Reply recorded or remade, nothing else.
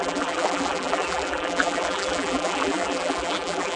remade